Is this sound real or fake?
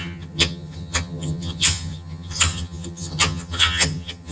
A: fake